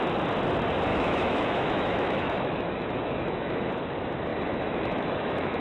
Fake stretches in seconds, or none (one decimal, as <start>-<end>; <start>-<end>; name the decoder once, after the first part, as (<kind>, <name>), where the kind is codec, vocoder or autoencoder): 0.9-3.7 (autoencoder, DAC-VAE); 4.3-5.6